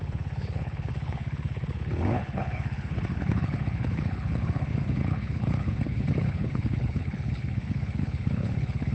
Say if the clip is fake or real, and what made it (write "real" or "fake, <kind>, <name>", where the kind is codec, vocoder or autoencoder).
fake, codec, HILCodec